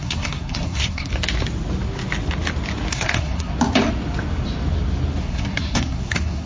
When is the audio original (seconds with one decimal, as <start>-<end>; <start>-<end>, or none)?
1.1-2.9; 3.5-5.2